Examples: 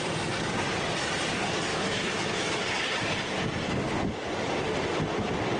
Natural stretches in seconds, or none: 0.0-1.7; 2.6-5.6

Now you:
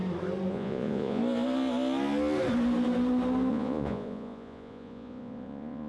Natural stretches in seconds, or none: 0.0-0.5; 1.2-3.5

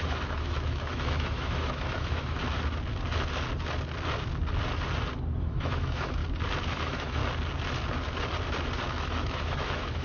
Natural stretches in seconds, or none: 2.4-5.4; 6.2-6.7; 7.2-8.9